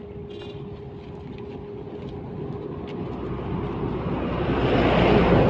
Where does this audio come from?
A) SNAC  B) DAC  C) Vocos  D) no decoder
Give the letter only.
D